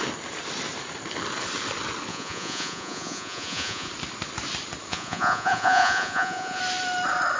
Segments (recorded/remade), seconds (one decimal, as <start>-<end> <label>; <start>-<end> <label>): 0.0-2.1 recorded; 2.1-3.9 remade; 3.9-4.9 recorded; 4.9-6.6 remade; 6.6-7.4 recorded